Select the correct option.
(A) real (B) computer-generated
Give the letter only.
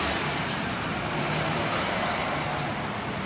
B